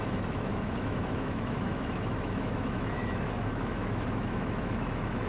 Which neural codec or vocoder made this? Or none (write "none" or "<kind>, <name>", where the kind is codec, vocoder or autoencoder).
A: autoencoder, DAC-VAE